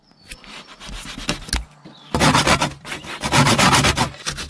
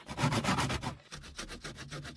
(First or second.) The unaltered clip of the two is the first